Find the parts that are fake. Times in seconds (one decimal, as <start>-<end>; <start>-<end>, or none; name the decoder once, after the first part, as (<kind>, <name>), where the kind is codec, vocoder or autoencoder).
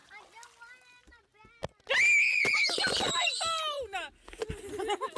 none